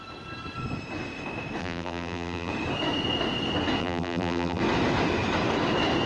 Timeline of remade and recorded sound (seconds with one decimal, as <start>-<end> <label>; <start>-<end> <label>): 0.0-1.6 recorded; 1.6-2.5 remade; 2.5-3.8 recorded; 3.8-4.6 remade; 4.6-6.1 recorded